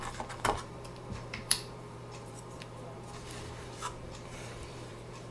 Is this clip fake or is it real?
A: fake